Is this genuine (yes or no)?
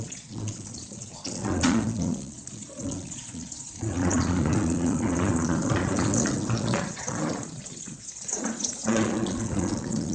no